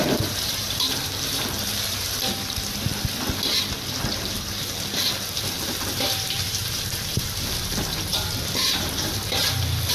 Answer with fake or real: fake